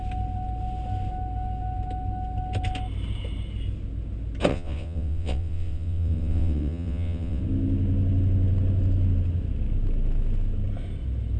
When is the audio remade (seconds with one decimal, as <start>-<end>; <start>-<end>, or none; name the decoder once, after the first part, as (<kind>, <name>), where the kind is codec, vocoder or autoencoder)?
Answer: 4.5-7.4 (vocoder, WaveNeXt)